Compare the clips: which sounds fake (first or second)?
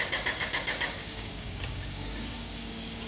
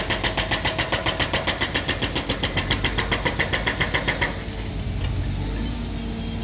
first